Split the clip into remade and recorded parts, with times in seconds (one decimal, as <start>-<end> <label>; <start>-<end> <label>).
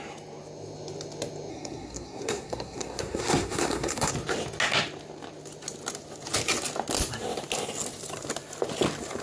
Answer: 0.0-1.5 recorded; 1.5-4.1 remade; 4.1-9.2 recorded